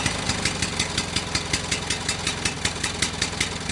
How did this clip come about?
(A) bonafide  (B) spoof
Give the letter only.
A